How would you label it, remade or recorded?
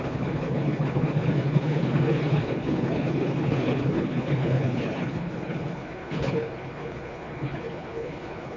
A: remade